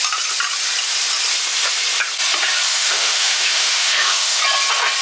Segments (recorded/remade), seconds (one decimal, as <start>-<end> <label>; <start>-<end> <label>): 0.0-2.7 recorded; 2.7-4.4 remade; 4.4-5.0 recorded